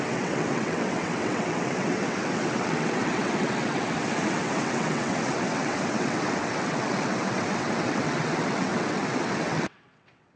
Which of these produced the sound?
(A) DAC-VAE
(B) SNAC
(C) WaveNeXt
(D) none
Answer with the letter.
C